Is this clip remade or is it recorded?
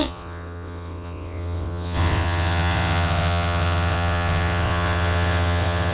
remade